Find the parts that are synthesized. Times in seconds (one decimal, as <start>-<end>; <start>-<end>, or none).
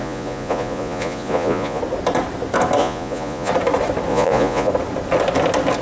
0.0-1.8; 2.8-3.5; 4.1-4.7